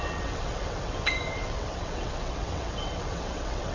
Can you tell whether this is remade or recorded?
remade